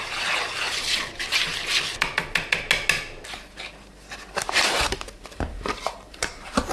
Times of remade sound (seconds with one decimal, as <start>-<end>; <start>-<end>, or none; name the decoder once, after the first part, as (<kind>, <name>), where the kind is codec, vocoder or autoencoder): 0.0-1.5 (vocoder, BigVGAN v2); 4.3-6.7